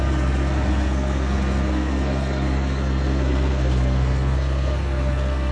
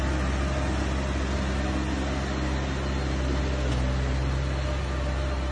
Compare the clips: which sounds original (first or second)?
second